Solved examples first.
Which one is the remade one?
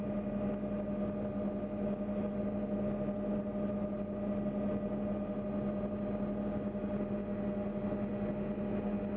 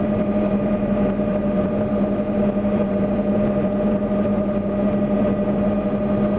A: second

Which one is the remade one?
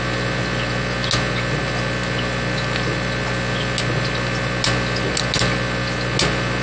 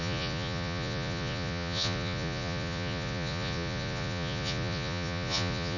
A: second